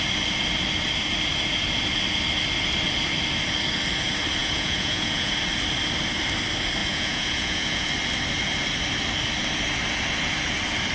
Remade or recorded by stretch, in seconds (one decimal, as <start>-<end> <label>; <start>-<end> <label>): 0.0-4.4 recorded; 4.4-5.3 remade; 5.3-6.8 recorded; 6.8-7.9 remade; 7.9-10.9 recorded